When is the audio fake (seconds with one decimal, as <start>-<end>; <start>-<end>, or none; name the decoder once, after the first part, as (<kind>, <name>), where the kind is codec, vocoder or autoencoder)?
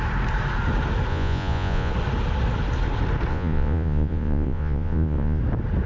1.1-1.9 (vocoder, Vocos); 3.3-5.4